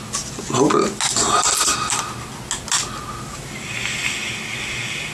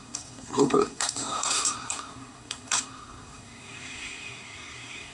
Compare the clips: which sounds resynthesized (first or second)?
second